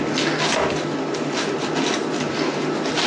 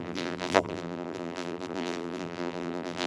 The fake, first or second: second